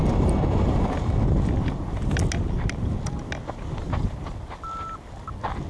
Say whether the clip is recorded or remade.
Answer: recorded